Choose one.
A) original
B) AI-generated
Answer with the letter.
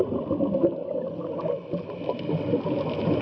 A